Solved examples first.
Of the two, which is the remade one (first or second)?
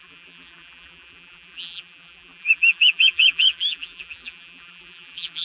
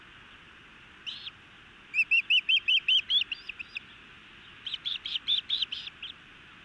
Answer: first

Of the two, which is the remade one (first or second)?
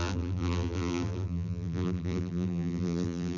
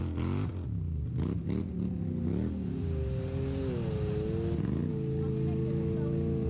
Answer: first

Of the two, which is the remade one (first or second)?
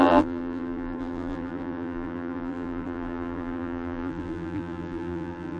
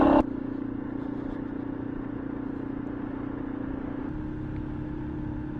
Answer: first